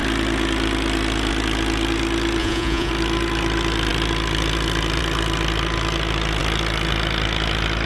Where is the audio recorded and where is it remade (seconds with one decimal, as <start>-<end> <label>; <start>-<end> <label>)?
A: 0.0-2.4 recorded; 2.4-2.9 remade; 2.9-7.9 recorded